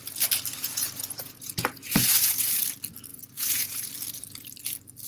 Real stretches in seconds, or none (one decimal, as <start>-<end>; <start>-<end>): 0.0-0.6; 2.6-3.1; 3.9-5.1